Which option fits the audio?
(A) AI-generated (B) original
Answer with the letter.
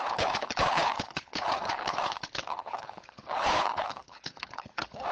A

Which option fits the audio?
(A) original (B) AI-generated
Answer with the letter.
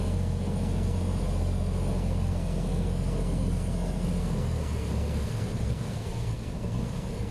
B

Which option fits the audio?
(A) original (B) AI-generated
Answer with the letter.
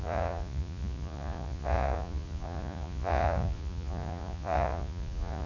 B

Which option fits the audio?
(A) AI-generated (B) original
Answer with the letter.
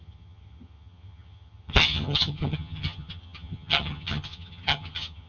A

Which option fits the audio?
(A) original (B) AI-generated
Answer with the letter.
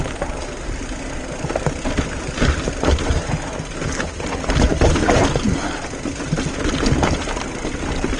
A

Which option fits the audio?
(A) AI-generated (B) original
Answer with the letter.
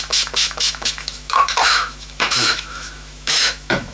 A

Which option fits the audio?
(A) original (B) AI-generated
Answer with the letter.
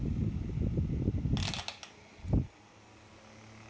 A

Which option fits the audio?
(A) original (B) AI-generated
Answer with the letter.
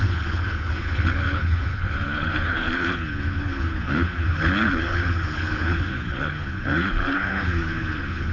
B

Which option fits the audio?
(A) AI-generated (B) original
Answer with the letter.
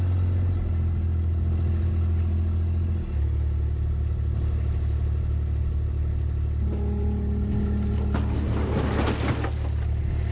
B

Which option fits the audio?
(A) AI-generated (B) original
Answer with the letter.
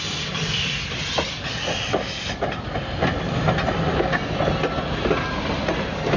B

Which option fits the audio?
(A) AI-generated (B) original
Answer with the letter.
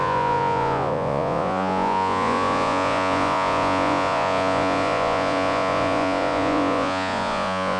A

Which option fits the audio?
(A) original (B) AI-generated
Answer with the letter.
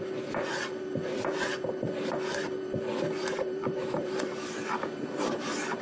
B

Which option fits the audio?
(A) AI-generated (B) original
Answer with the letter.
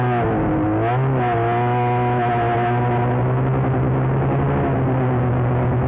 B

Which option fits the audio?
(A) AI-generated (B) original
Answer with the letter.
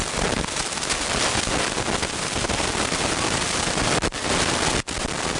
B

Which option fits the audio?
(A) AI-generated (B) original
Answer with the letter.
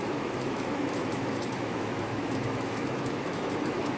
A